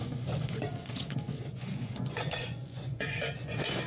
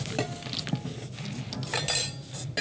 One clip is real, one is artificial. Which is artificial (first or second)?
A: first